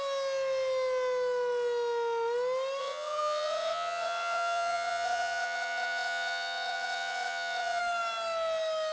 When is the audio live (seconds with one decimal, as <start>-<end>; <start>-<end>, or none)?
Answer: 0.0-2.8; 7.8-8.9

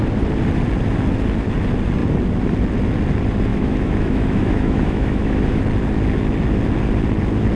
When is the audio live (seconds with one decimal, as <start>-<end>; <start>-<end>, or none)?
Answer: 0.0-3.5; 5.6-7.6

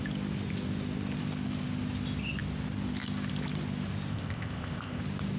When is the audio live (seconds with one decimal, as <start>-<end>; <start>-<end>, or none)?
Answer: 0.0-4.1; 5.0-5.4

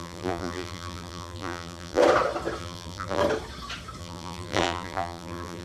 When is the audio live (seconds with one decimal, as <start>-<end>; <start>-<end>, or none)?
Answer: 2.0-2.6; 3.2-4.0